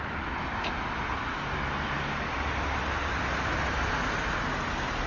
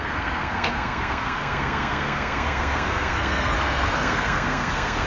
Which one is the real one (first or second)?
first